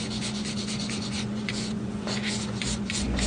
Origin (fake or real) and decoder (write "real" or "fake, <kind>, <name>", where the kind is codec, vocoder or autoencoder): fake, vocoder, Vocos